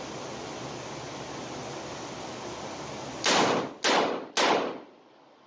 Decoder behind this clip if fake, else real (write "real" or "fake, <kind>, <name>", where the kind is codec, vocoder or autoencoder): real